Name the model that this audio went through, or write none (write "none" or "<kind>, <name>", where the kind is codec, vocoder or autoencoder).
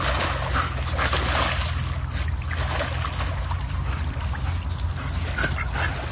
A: none